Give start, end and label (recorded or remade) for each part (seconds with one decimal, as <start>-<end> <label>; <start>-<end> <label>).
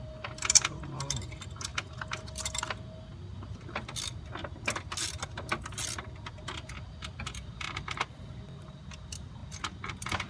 0.0-10.3 recorded